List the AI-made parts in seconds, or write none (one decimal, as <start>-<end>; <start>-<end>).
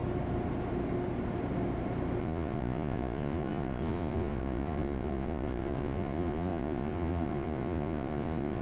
2.2-8.6